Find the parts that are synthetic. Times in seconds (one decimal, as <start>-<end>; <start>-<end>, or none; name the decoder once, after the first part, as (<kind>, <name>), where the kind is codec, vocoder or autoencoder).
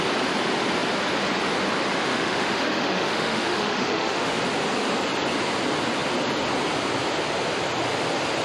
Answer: 2.1-4.4 (autoencoder, DAC-VAE)